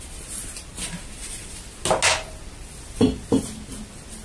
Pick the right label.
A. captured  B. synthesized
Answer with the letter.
A